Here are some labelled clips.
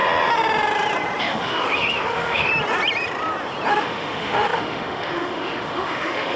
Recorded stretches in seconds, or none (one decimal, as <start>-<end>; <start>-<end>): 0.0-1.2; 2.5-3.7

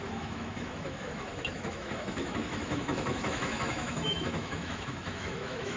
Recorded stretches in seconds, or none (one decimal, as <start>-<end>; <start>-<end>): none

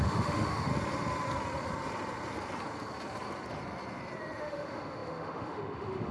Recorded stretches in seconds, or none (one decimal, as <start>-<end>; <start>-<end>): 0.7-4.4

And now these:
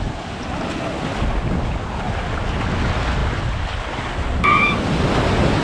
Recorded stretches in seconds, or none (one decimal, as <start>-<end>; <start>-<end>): 0.0-5.6

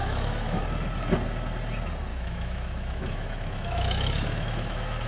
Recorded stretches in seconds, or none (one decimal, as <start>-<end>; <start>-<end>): 0.6-2.1